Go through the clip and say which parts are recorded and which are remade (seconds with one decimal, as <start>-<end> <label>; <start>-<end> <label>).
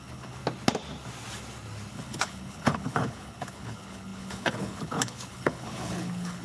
0.0-0.4 remade; 0.4-1.9 recorded; 1.9-6.4 remade